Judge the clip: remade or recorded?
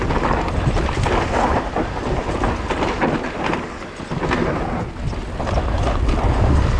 recorded